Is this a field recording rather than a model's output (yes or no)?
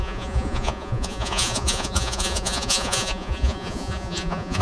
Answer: no